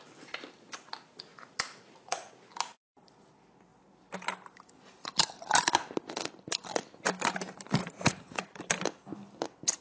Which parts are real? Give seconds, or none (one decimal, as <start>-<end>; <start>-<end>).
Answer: 0.0-1.3; 2.3-7.8; 8.6-9.8